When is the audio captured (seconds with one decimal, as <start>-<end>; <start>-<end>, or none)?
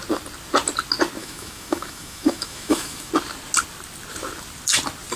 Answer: 0.0-1.2; 3.1-5.2